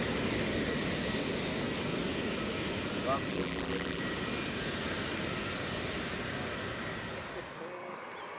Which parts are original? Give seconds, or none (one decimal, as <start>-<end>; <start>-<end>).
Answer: 0.0-3.3; 4.0-8.4